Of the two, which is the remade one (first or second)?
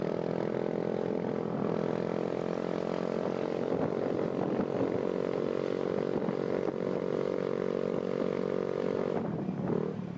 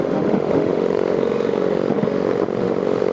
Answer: second